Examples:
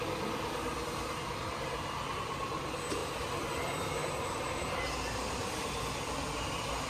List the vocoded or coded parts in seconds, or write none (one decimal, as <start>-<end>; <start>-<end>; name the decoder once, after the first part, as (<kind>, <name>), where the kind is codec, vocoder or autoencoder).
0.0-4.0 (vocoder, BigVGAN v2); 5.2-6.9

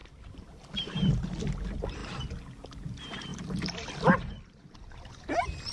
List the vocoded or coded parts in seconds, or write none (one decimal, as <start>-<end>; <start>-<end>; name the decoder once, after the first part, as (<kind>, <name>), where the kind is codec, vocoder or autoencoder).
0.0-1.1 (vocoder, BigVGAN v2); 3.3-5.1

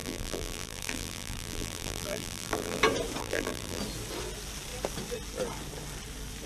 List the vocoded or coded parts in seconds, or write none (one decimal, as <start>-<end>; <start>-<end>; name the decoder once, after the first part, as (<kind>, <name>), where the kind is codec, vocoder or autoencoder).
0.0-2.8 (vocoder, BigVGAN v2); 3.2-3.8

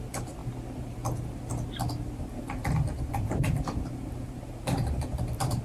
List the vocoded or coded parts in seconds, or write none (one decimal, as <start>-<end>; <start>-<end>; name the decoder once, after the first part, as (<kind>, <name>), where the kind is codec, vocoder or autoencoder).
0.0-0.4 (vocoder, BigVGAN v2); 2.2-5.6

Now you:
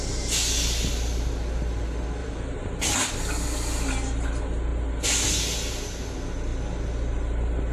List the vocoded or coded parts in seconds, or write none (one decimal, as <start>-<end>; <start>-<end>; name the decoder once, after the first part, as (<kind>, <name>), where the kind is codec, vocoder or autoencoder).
2.2-3.1 (vocoder, BigVGAN v2)

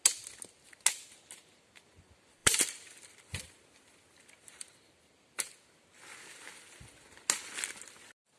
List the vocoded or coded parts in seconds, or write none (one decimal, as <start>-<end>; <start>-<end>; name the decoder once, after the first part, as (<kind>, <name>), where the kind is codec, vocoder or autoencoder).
2.4-5.5 (vocoder, BigVGAN v2)

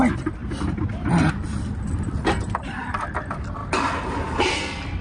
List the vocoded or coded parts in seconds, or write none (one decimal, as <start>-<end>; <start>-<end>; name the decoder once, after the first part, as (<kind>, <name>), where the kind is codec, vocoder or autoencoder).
0.0-3.6 (vocoder, BigVGAN v2)